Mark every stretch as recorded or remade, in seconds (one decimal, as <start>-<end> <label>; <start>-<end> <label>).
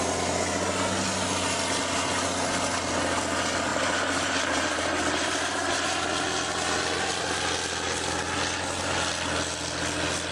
0.0-3.7 recorded; 3.7-5.7 remade; 5.7-10.3 recorded